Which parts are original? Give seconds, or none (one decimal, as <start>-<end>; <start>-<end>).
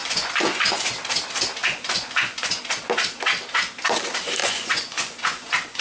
0.9-1.6; 2.6-4.4